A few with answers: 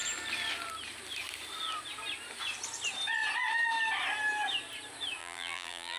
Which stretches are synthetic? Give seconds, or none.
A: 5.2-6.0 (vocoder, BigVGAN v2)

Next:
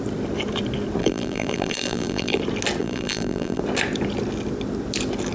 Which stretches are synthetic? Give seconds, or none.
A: 1.0-2.4 (vocoder, BigVGAN v2); 2.8-3.6

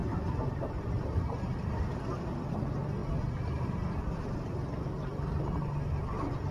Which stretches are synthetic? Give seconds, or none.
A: 0.0-1.8 (vocoder, BigVGAN v2)

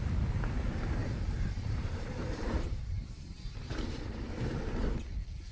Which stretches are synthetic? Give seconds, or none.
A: 1.0-4.3 (vocoder, BigVGAN v2)

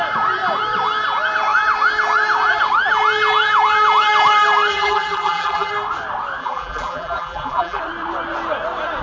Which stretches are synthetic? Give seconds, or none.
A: 4.7-5.7 (vocoder, BigVGAN v2); 6.4-7.8

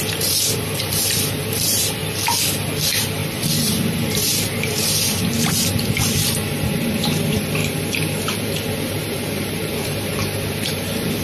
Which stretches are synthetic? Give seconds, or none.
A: 0.0-2.0 (vocoder, BigVGAN v2); 2.8-7.6; 8.4-11.2